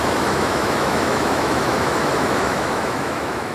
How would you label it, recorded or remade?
remade